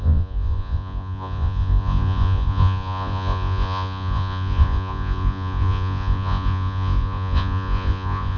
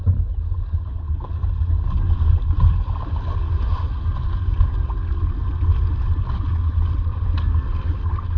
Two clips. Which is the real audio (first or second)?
second